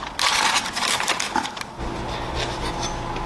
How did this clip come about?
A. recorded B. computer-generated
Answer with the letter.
A